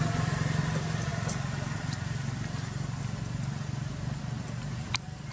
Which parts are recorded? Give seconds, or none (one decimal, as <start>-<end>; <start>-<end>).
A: 0.0-1.1; 3.0-5.3